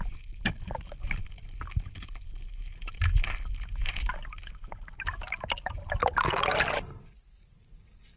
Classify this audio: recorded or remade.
recorded